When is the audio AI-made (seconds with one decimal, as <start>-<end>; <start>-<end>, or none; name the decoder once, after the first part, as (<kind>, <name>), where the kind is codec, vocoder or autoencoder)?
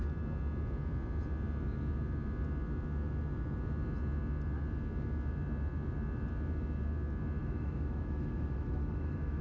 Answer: 7.4-9.4 (autoencoder, DAC-VAE)